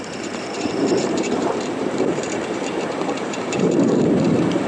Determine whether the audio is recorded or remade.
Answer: remade